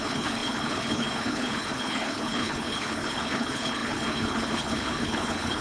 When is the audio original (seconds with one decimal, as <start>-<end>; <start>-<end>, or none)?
none